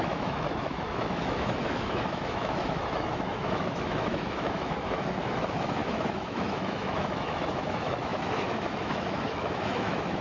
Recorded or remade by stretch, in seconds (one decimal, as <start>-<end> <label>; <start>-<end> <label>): 0.0-10.2 remade